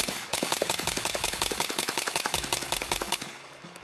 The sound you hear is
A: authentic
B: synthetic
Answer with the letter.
B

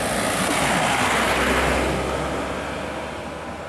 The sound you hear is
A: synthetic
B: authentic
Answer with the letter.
B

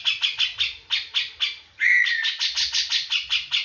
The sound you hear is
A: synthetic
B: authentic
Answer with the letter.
B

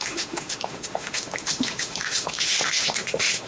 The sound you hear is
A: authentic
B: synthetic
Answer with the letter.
B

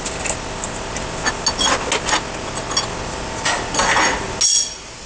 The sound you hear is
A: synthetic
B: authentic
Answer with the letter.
B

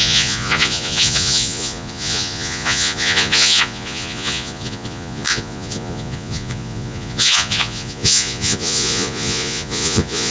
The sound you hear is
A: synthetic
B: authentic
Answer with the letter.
A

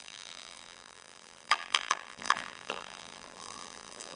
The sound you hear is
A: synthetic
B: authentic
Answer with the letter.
A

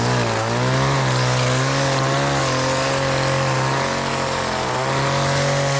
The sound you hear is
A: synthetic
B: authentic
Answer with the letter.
B